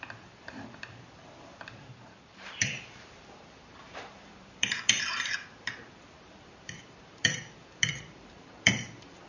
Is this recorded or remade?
remade